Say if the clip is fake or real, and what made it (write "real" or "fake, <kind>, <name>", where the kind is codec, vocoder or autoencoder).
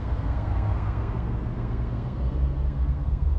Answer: fake, codec, SNAC